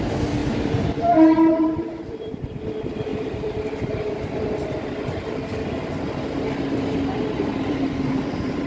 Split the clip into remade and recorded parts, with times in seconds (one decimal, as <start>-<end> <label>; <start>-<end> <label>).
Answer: 0.0-0.4 recorded; 0.4-2.6 remade; 2.6-3.1 recorded; 3.1-4.5 remade; 4.5-8.7 recorded